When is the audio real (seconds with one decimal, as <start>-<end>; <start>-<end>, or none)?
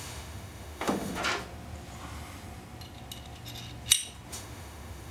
1.2-4.3